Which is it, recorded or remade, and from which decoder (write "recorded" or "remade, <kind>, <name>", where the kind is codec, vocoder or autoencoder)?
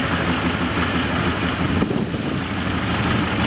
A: recorded